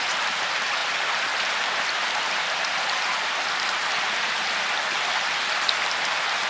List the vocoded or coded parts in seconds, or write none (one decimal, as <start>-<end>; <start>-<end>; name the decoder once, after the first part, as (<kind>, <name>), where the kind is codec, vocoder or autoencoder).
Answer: none